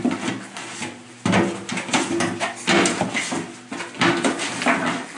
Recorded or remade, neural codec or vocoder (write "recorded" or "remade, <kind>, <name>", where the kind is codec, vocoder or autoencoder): recorded